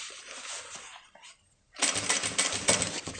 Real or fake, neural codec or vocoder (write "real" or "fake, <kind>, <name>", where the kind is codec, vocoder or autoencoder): real